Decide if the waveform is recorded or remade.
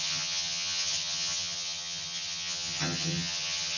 remade